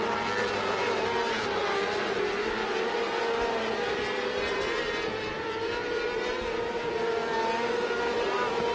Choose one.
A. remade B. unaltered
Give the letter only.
B